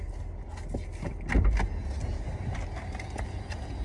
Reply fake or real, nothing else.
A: real